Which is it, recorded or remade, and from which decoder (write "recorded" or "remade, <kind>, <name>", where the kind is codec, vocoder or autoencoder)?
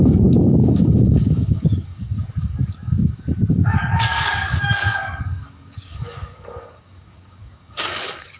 remade, codec, DAC